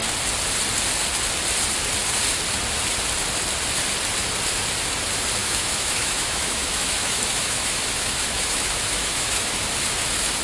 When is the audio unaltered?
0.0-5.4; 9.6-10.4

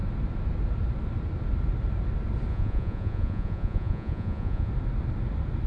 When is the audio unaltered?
0.0-2.5; 4.7-5.7

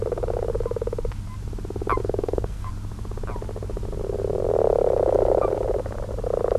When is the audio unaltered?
0.0-2.0; 2.7-6.6

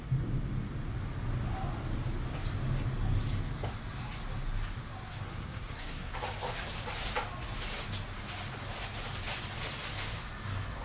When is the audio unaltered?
0.0-5.1; 6.1-10.8

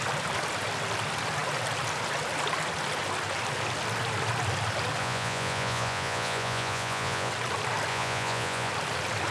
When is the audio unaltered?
0.0-5.0; 7.3-7.9; 8.7-9.3

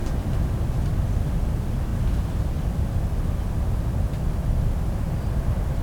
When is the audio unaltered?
0.0-5.8